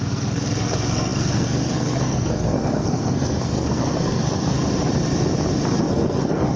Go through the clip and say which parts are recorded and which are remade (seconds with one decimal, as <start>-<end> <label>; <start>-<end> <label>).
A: 0.0-4.6 remade; 4.6-5.8 recorded; 5.8-6.6 remade